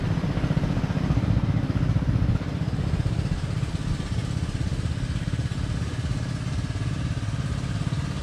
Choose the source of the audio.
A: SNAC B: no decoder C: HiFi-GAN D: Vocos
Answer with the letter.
B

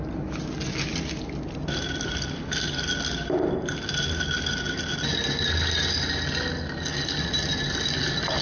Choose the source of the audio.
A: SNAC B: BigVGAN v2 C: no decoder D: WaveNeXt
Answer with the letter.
C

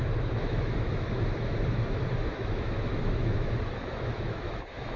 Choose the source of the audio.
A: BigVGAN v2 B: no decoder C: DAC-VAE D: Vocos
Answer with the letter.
C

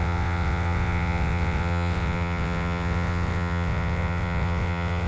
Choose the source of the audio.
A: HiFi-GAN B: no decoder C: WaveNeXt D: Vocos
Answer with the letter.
C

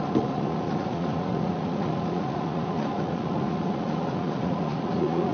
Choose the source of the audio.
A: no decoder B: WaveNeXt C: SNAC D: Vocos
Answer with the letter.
D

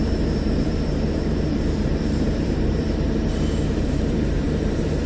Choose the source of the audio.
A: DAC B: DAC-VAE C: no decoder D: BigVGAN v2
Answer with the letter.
D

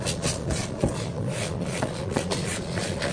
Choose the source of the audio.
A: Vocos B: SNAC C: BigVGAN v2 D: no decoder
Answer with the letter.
A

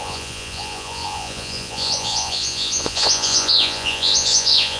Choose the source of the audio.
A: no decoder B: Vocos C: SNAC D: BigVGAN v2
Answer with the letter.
B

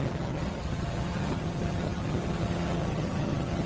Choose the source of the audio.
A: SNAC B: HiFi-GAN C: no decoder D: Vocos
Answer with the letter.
B